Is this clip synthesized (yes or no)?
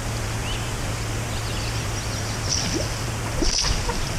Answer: no